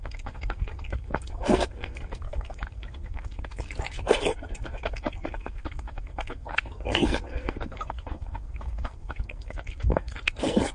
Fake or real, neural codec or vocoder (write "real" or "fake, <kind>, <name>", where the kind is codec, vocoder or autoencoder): fake, codec, SNAC